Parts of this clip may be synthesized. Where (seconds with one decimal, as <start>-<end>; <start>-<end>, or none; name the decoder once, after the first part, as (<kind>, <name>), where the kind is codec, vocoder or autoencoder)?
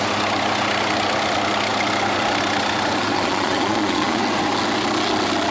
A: 3.1-4.2 (vocoder, Vocos)